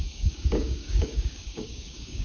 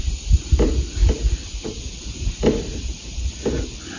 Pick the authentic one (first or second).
second